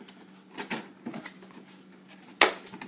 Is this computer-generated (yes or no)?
no